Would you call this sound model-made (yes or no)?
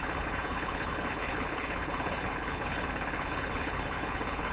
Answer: yes